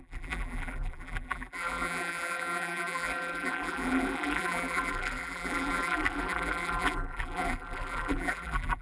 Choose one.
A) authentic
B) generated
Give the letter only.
B